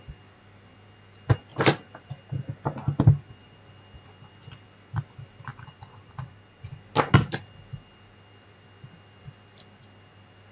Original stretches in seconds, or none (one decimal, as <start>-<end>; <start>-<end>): 0.0-1.5; 2.2-5.5; 6.7-10.5